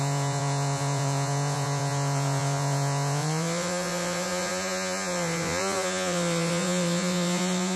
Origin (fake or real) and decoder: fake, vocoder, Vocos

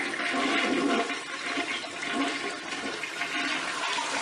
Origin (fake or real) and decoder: real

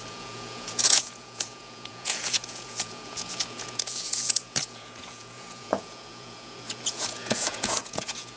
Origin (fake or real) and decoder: fake, vocoder, Vocos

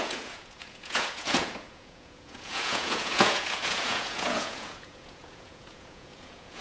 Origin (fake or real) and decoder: fake, vocoder, Vocos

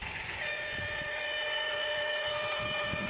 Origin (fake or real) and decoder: fake, vocoder, Vocos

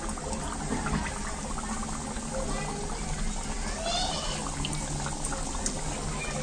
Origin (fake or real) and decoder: real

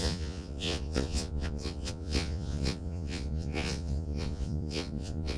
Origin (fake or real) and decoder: fake, vocoder, Vocos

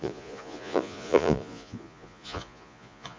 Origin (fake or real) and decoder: fake, vocoder, Vocos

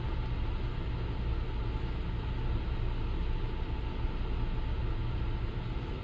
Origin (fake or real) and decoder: real